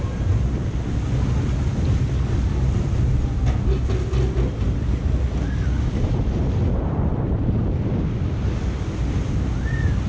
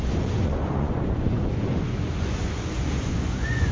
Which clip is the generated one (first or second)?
second